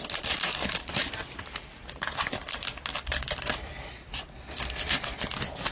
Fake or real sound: real